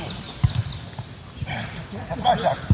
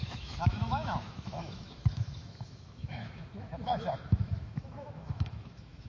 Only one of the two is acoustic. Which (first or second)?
first